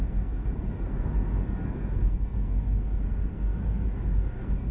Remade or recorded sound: remade